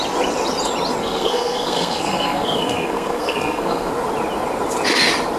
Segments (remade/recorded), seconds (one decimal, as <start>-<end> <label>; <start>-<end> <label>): 0.0-1.0 recorded; 1.0-3.9 remade; 3.9-5.4 recorded